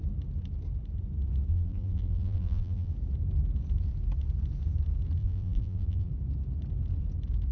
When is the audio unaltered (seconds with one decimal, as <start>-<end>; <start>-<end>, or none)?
0.0-1.5; 2.9-5.2; 6.1-7.5